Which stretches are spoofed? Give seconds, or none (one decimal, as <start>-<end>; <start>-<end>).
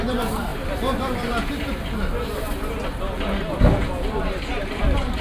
none